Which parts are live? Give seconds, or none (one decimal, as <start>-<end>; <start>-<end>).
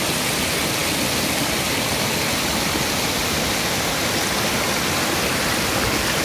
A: 0.0-6.2